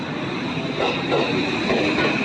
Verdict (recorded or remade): recorded